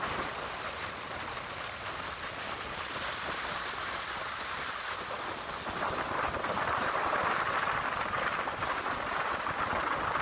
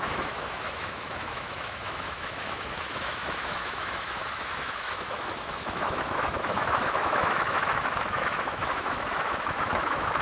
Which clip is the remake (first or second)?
second